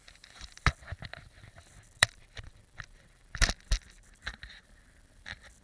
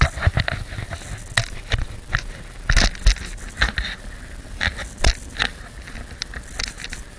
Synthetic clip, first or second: first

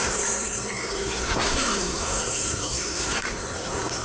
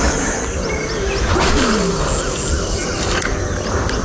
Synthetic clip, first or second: first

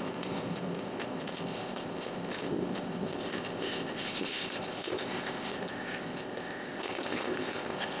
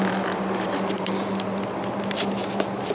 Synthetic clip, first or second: first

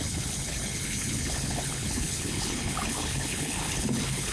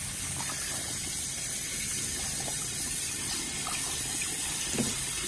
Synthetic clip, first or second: first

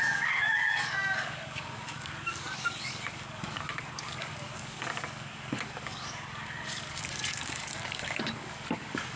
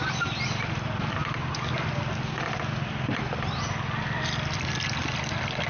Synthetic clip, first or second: first